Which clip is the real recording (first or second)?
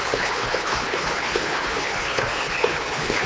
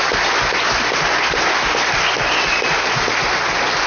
second